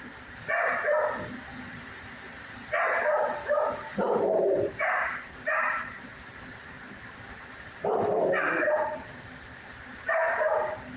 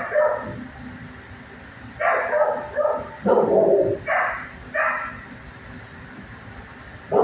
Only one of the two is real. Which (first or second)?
second